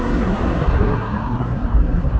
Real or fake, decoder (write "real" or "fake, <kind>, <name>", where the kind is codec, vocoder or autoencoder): fake, codec, SNAC